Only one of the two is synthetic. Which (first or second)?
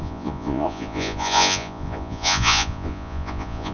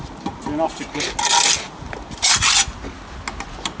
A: first